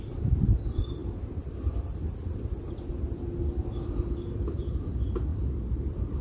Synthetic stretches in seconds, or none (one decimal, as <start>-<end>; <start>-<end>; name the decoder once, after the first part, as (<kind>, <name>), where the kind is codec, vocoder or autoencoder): none